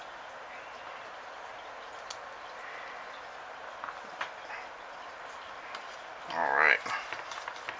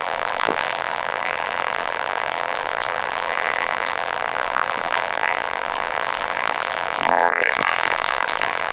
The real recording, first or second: first